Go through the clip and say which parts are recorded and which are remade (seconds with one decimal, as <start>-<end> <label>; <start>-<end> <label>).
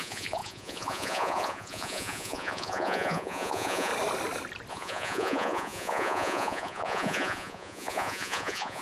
0.0-3.9 remade; 3.9-4.7 recorded; 4.7-8.8 remade